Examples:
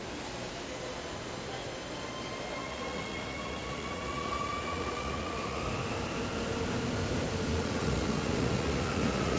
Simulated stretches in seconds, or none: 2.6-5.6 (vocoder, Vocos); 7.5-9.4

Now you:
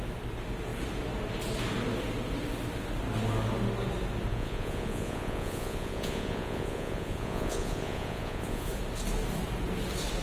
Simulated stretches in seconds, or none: 4.3-8.7 (vocoder, Vocos)

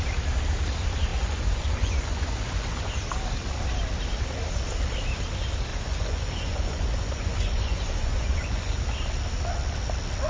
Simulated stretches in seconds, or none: 1.1-2.9 (vocoder, Vocos); 5.7-8.8

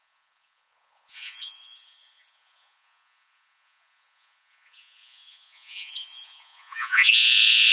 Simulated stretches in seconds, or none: 0.0-7.7 (vocoder, Vocos)